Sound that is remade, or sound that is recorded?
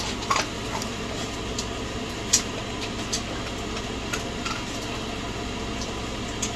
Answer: recorded